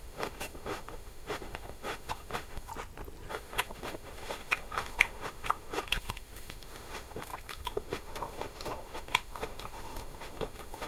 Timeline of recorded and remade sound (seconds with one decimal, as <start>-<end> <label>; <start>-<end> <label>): 0.0-2.7 remade; 2.7-3.3 recorded; 3.3-10.9 remade